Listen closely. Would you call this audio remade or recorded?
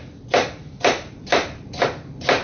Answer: remade